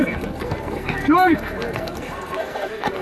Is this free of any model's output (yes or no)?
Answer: no